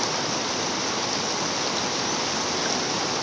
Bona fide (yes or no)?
yes